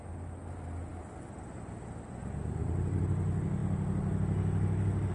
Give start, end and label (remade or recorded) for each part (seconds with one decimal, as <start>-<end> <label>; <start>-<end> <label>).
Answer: 0.0-5.1 recorded